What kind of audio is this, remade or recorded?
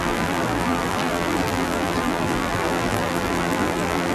remade